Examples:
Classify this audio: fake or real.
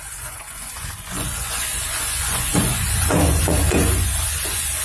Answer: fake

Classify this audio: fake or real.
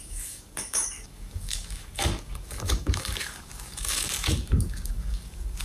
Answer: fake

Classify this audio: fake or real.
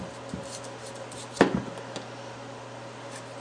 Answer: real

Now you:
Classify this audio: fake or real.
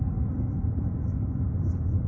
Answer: real